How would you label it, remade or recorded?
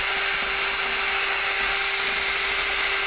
recorded